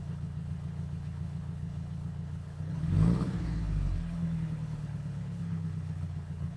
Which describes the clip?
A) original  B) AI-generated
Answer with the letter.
B